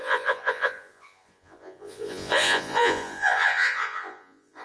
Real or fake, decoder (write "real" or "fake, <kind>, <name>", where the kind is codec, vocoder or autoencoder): fake, vocoder, Vocos